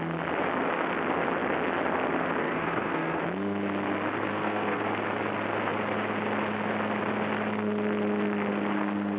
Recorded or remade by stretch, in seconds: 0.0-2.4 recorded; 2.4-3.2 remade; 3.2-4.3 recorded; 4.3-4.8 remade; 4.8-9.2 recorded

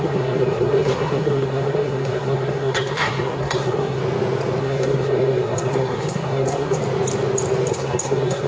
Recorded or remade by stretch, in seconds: 0.0-4.0 remade; 4.0-4.6 recorded; 4.6-6.8 remade; 6.8-7.7 recorded; 7.7-8.5 remade

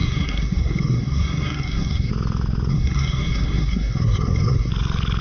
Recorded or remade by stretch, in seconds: 0.0-2.1 remade; 2.1-2.7 recorded; 2.7-4.7 remade; 4.7-5.2 recorded

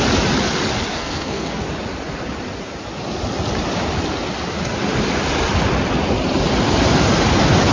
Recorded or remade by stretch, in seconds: 0.0-0.9 recorded; 0.9-1.6 remade; 1.6-7.7 recorded